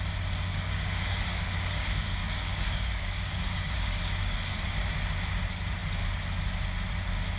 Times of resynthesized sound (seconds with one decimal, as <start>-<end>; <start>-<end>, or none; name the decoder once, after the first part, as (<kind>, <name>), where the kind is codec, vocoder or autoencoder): 0.5-4.9 (codec, DAC)